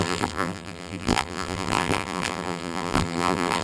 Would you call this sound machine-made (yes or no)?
yes